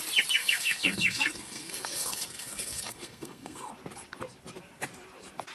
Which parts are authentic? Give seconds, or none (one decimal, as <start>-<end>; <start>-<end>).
0.0-0.4; 3.7-5.5